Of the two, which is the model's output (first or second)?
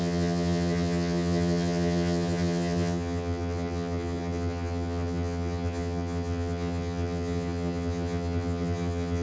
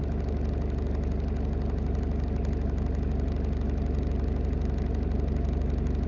first